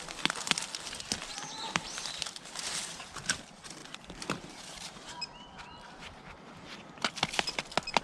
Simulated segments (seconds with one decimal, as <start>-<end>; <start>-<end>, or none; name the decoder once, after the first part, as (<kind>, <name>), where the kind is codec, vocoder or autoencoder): 1.3-3.1 (vocoder, BigVGAN v2); 3.8-5.2